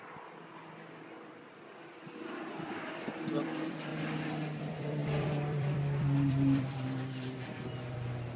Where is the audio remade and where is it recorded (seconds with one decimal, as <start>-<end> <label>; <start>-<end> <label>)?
0.0-3.9 remade; 3.9-4.6 recorded; 4.6-8.4 remade